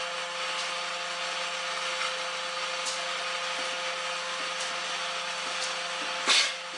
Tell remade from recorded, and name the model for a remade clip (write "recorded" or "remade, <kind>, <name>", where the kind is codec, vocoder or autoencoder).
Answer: recorded